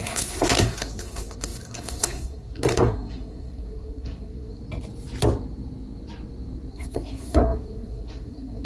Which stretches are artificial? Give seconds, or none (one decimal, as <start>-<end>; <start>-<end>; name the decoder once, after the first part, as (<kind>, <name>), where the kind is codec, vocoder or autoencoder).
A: 0.0-4.6 (codec, SNAC); 6.7-8.7